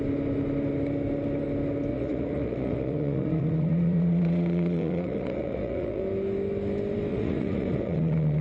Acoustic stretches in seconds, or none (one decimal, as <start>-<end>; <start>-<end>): 0.0-1.9; 6.0-7.1